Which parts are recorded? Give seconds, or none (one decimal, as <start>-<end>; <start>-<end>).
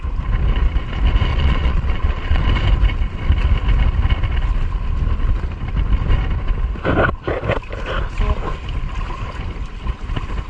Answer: 0.0-1.3; 2.5-10.5